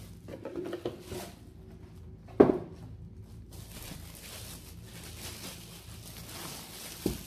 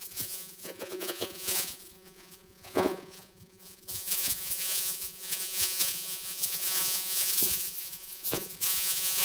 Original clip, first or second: first